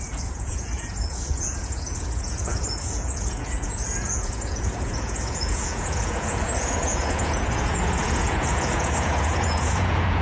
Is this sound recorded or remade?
remade